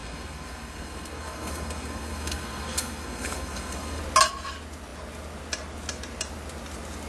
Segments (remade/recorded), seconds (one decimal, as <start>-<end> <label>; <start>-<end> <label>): 0.0-4.0 remade; 4.0-7.1 recorded